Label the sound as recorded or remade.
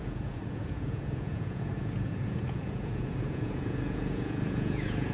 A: remade